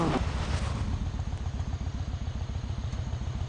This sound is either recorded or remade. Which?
recorded